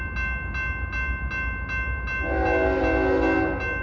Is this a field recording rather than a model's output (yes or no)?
yes